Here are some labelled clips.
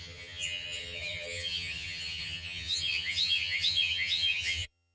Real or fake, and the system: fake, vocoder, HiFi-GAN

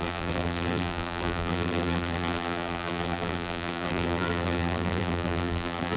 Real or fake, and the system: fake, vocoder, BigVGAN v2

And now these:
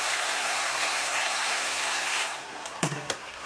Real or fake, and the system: fake, codec, SNAC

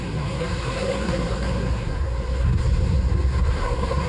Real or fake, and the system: fake, codec, SNAC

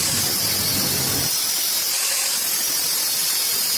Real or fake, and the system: real